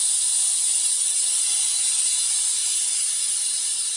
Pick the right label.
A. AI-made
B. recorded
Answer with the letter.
B